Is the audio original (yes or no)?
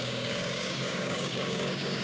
no